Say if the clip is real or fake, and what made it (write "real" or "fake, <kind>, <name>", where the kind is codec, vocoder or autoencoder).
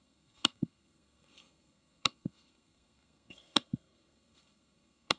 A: fake, codec, SNAC